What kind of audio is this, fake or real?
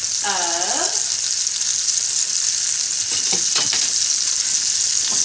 real